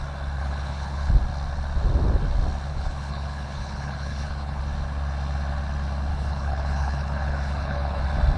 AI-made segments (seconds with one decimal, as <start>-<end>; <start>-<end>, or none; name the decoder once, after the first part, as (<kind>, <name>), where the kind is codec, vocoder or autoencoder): 0.4-1.1 (codec, HILCodec); 2.7-4.6; 6.1-8.0